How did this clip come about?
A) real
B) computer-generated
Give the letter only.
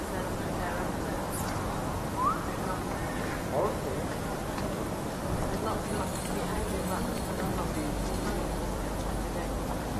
A